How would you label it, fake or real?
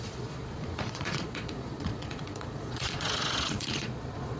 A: fake